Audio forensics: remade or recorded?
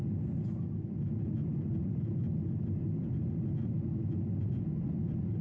recorded